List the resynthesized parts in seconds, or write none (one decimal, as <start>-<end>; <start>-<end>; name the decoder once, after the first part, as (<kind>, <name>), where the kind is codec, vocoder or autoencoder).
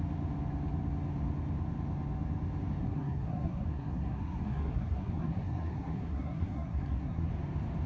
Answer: 2.8-7.3 (codec, SNAC)